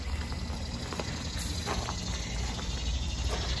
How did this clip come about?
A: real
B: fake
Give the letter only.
A